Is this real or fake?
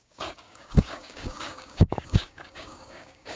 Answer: fake